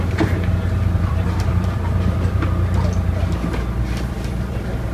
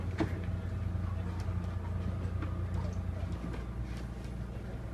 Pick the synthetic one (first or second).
first